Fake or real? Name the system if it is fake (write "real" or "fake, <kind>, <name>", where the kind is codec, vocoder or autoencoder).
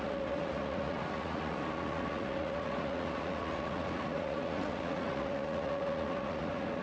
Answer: fake, vocoder, Vocos